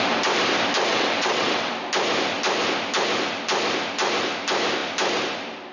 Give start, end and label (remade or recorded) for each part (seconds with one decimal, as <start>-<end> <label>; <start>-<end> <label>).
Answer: 0.0-0.9 recorded; 0.9-1.7 remade; 1.7-5.7 recorded

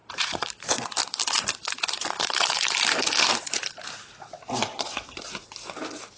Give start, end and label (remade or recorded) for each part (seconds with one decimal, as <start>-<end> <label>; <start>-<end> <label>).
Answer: 0.0-0.6 remade; 0.6-1.0 recorded; 1.0-3.9 remade; 3.9-6.2 recorded

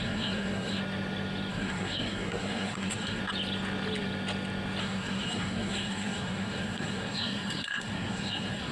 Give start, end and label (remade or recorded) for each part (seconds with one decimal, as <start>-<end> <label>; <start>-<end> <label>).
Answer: 0.0-0.8 remade; 0.8-1.5 recorded; 1.5-3.2 remade; 3.2-4.8 recorded; 4.8-8.7 remade

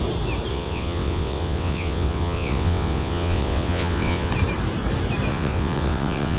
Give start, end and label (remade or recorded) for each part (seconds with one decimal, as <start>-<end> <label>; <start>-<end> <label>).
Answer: 0.0-0.5 recorded; 0.5-4.3 remade; 4.3-5.3 recorded; 5.3-6.4 remade